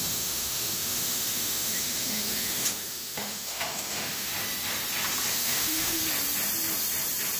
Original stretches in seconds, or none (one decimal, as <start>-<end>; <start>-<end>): 4.3-5.3; 6.0-7.4